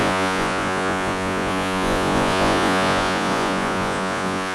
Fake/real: fake